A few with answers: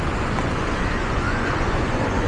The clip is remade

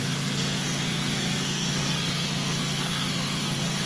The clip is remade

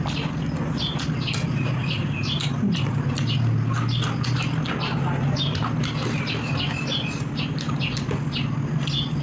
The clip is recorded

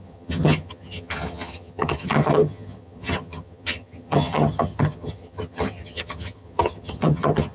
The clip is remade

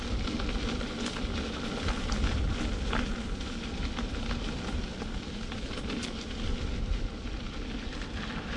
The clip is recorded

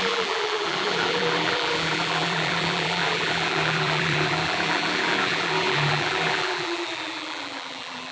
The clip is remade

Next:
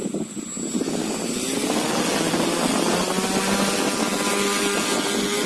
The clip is recorded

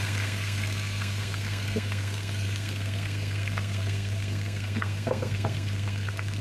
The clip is remade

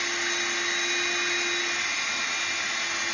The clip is recorded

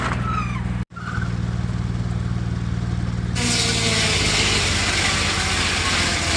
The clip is recorded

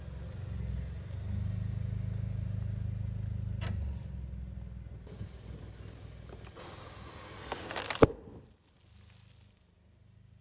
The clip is recorded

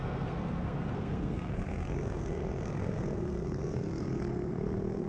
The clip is remade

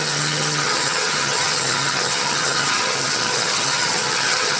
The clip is remade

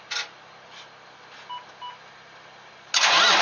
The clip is recorded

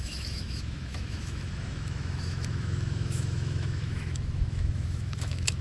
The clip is remade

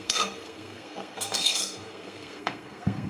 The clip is remade